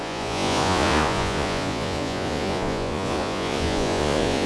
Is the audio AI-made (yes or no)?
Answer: yes